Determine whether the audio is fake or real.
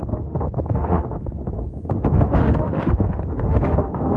fake